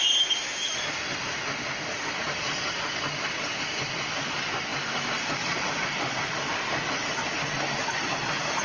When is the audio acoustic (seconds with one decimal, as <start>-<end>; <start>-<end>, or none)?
0.0-8.6